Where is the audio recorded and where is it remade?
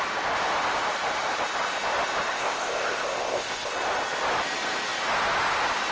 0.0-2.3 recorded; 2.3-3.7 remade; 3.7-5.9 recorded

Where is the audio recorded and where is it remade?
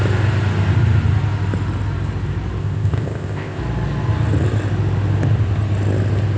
0.0-2.6 recorded; 2.6-3.6 remade; 3.6-6.4 recorded